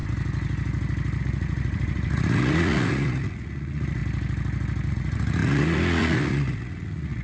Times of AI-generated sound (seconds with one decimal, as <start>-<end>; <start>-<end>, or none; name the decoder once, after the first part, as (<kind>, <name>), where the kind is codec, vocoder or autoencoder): 1.2-4.0 (vocoder, Vocos); 4.9-7.2